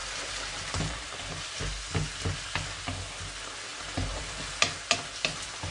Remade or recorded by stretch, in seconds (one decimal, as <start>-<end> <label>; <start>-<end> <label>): 0.0-1.5 remade; 1.5-5.7 recorded